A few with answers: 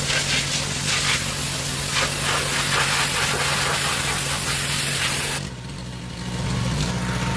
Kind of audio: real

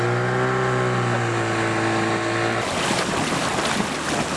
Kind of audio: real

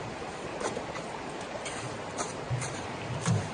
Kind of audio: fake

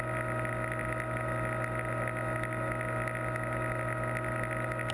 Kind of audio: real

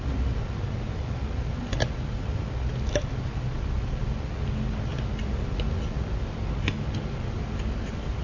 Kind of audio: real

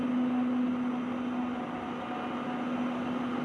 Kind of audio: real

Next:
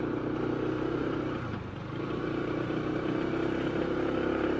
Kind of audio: fake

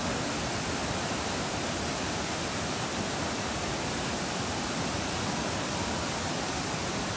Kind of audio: fake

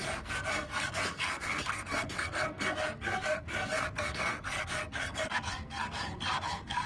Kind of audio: fake